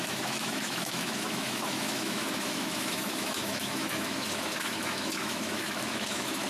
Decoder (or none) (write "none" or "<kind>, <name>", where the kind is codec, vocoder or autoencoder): autoencoder, DAC-VAE